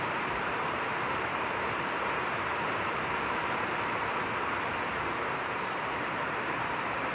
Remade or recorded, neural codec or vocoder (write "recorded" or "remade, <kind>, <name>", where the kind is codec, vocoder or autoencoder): remade, vocoder, BigVGAN v2